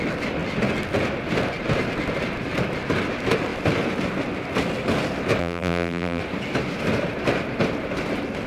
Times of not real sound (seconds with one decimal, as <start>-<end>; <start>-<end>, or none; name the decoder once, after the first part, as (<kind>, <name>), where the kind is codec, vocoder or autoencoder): 5.4-6.2 (vocoder, BigVGAN v2)